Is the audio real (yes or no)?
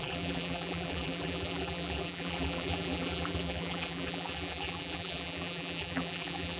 no